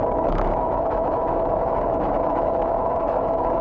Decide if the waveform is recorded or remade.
remade